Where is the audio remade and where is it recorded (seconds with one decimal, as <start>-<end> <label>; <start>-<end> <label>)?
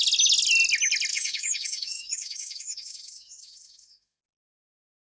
0.0-1.1 recorded; 1.1-4.2 remade; 4.2-5.1 recorded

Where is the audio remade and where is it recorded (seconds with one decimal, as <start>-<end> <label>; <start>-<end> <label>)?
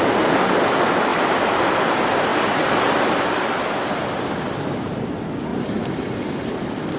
0.0-1.1 recorded; 1.1-1.6 remade; 1.6-5.5 recorded; 5.5-6.0 remade; 6.0-7.0 recorded